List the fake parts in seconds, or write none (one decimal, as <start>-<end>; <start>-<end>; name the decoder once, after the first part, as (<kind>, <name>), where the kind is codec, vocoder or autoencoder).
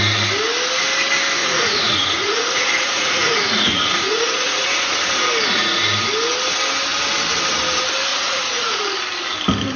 1.4-5.1 (vocoder, Vocos); 8.1-8.8